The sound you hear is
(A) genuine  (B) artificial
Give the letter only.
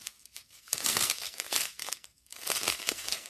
B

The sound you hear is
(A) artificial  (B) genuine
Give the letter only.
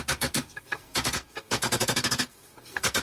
A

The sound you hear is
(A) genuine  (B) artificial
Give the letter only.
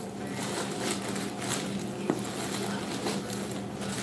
A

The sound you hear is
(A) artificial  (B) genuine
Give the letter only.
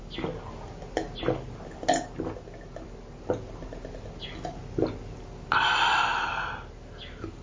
B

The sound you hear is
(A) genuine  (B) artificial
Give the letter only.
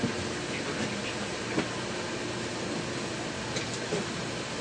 A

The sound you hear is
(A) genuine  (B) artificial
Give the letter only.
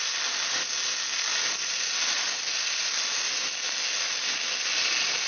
A